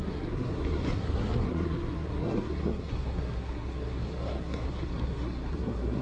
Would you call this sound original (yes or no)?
no